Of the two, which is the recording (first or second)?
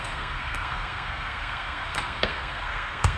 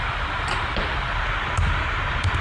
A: second